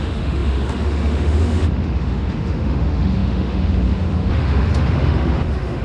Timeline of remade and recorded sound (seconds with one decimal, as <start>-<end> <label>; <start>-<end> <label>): 0.0-5.8 remade